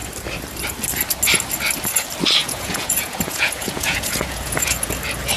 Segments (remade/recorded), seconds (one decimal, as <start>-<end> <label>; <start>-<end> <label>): 0.0-2.4 recorded; 2.4-4.9 remade; 4.9-5.4 recorded